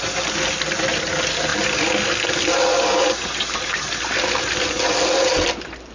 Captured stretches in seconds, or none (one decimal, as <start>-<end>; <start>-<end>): 0.0-5.9